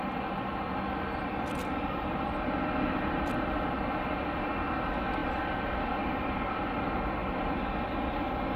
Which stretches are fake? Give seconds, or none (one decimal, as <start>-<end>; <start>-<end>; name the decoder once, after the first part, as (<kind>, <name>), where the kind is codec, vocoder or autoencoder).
none

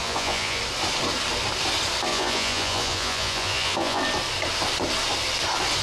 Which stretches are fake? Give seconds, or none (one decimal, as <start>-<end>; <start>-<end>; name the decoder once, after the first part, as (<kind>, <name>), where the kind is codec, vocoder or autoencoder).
0.0-0.6 (vocoder, Vocos); 2.1-4.0

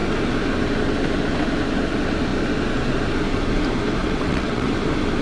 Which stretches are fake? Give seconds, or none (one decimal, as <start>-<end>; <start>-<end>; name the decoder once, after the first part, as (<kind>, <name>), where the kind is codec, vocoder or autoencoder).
4.0-4.7 (vocoder, WaveNeXt)

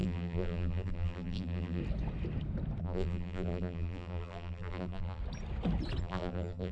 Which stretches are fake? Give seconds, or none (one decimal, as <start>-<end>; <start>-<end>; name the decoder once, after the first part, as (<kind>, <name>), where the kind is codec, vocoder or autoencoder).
0.0-1.8 (vocoder, BigVGAN v2); 2.8-5.2; 6.0-6.7